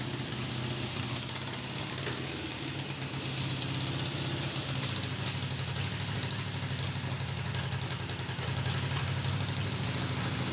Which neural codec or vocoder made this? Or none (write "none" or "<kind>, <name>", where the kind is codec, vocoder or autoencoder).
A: none